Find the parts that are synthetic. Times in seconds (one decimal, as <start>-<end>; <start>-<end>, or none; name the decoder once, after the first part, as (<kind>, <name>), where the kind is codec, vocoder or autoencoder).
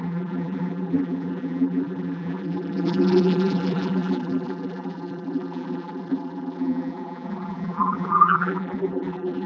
0.0-9.5 (vocoder, BigVGAN v2)